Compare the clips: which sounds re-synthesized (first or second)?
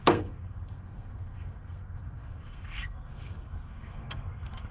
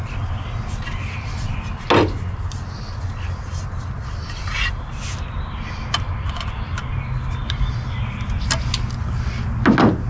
first